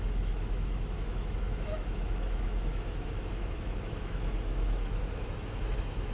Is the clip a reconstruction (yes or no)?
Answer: yes